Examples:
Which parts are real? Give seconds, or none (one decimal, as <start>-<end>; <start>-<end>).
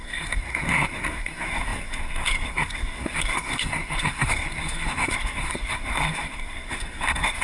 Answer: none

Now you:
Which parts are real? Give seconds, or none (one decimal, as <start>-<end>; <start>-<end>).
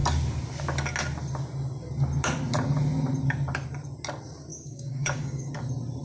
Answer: 0.0-4.5; 5.5-6.0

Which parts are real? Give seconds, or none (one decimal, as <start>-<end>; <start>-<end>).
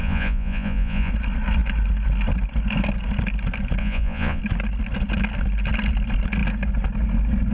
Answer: 1.1-3.8; 4.4-7.5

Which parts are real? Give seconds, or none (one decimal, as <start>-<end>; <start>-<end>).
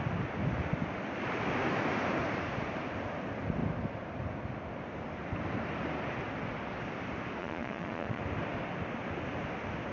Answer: 0.0-7.4; 8.2-9.9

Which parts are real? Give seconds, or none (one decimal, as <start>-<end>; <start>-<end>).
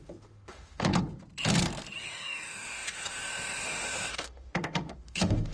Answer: 0.9-2.0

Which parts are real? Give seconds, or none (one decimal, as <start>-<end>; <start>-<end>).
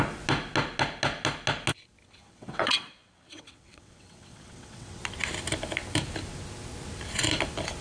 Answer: 0.0-2.2; 5.0-7.8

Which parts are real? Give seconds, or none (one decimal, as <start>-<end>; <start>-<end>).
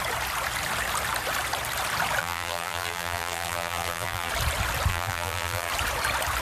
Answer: 0.0-2.2; 4.3-4.9; 5.7-6.4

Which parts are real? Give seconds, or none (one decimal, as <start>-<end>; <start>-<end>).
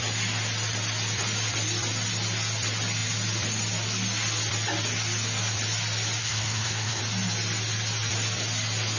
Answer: 0.0-6.2; 7.0-9.0